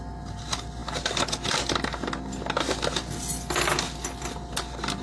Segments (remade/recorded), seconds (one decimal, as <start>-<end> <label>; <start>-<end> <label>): 0.0-5.0 recorded

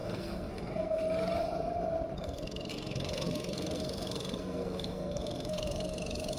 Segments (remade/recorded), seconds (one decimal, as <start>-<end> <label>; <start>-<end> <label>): 0.0-1.0 remade; 1.0-2.2 recorded; 2.2-6.0 remade; 6.0-6.4 recorded

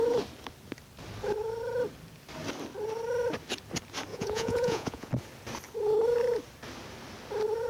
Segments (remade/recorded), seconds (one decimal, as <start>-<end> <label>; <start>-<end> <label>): 0.0-4.1 recorded; 4.1-5.1 remade; 5.1-7.7 recorded

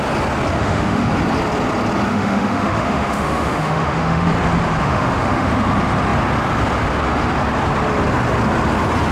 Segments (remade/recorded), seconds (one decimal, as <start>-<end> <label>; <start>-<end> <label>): 0.0-0.6 recorded; 0.6-1.1 remade; 1.1-2.1 recorded; 2.1-4.3 remade; 4.3-4.8 recorded; 4.8-5.5 remade; 5.5-9.1 recorded

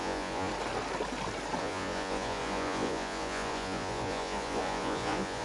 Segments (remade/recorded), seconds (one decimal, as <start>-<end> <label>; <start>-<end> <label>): 0.0-0.5 remade; 0.5-1.6 recorded; 1.6-5.4 remade